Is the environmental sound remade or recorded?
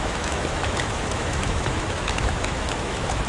remade